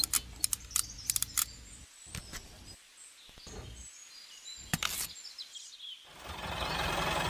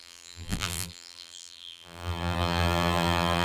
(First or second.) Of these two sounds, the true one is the first